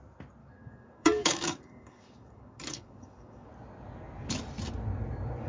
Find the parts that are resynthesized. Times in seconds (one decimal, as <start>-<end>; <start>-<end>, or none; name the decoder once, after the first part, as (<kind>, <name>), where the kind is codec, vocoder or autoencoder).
0.4-3.5 (codec, DAC)